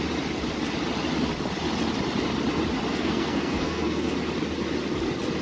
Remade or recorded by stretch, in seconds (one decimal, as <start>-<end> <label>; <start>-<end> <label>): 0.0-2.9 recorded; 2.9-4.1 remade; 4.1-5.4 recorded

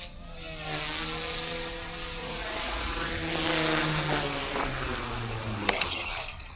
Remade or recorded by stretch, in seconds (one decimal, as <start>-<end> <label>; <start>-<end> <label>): 0.0-2.2 recorded; 2.2-3.1 remade; 3.1-6.6 recorded

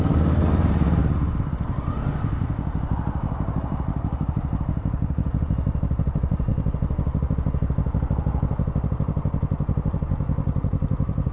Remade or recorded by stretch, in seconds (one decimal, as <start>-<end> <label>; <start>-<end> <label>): 0.0-1.0 remade; 1.0-1.5 recorded; 1.5-6.5 remade; 6.5-10.6 recorded; 10.6-11.3 remade

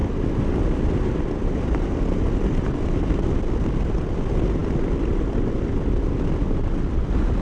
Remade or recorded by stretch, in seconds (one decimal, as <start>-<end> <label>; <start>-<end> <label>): 0.0-7.4 recorded